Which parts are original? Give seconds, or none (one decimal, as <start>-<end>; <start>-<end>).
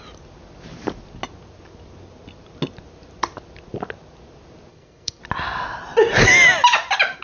0.0-4.7; 5.2-7.2